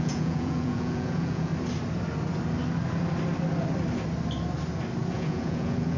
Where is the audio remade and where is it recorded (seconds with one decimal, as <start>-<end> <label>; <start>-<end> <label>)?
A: 0.0-1.5 remade; 1.5-5.1 recorded; 5.1-6.0 remade